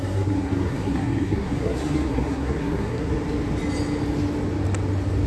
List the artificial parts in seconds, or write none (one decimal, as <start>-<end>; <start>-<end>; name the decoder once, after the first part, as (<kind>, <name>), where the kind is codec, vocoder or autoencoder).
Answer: 0.0-3.1 (codec, SNAC)